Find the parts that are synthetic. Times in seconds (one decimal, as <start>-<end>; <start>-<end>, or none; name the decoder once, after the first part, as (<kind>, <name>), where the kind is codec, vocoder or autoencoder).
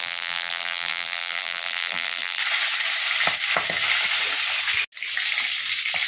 0.0-2.4 (vocoder, BigVGAN v2)